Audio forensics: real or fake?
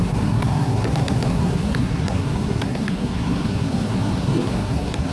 fake